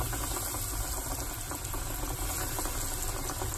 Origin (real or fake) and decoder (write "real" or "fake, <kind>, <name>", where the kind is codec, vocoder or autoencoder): real